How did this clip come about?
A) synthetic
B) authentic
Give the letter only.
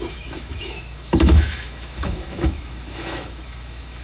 A